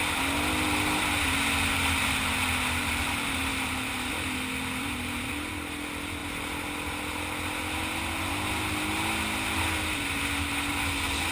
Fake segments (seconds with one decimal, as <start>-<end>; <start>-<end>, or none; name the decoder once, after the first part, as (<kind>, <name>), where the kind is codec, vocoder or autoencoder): none